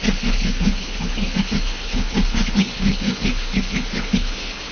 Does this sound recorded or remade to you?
remade